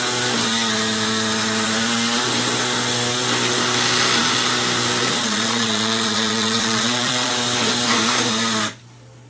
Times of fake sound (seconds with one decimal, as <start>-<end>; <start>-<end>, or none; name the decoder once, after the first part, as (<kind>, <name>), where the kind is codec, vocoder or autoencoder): 5.0-7.3 (vocoder, Vocos)